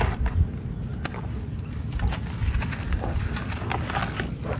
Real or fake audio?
real